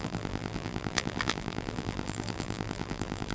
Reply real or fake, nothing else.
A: fake